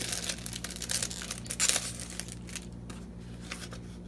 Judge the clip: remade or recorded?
recorded